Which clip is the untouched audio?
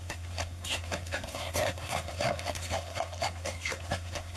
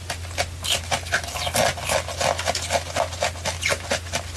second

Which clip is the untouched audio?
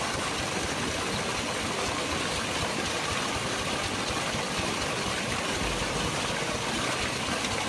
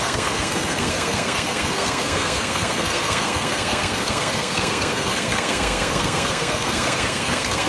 first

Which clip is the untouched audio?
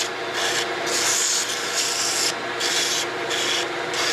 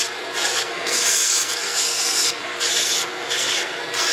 first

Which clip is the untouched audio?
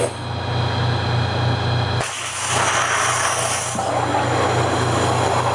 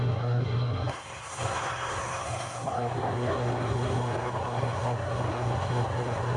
first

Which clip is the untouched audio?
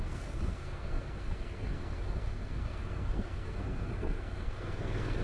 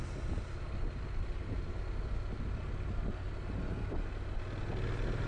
second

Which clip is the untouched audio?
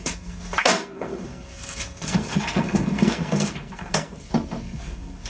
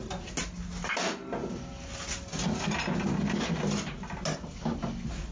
second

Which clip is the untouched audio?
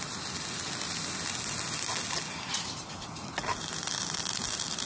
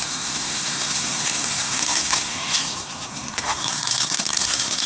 first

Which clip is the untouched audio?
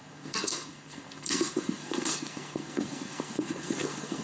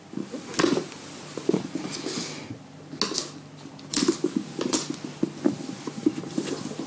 second